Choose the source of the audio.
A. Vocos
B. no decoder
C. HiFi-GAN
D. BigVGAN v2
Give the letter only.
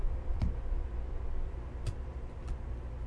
B